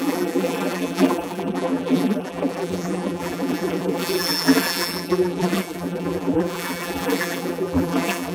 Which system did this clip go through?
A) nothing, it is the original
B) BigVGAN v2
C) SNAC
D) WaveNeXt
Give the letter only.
B